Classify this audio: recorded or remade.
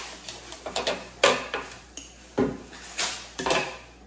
recorded